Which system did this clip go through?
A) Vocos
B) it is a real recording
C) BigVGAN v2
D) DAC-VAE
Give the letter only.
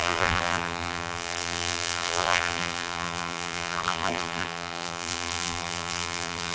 C